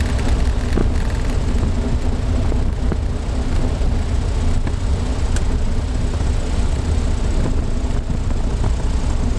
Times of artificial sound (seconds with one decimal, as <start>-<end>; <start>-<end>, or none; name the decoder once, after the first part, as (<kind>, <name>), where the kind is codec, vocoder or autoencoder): none